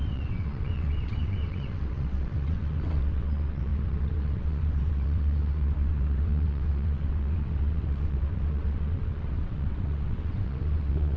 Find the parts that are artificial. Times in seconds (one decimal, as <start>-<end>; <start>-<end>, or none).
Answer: 0.0-11.2